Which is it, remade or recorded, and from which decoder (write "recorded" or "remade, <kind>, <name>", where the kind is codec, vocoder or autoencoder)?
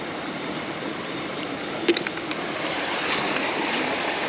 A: remade, vocoder, BigVGAN v2